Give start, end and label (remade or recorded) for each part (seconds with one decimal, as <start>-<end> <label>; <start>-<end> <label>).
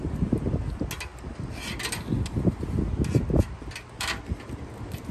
0.0-5.1 recorded